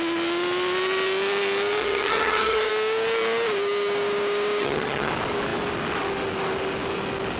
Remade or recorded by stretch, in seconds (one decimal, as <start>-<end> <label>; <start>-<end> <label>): 0.0-1.8 recorded; 1.8-2.7 remade; 2.7-4.6 recorded; 4.6-5.1 remade; 5.1-7.4 recorded